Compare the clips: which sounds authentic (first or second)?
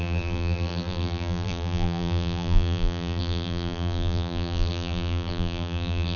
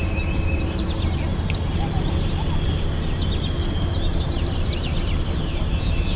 second